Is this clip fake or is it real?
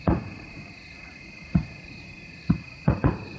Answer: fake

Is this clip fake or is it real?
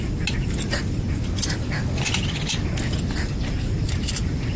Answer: real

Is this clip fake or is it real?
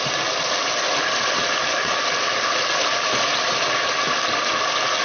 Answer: real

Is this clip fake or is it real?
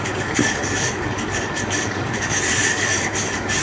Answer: fake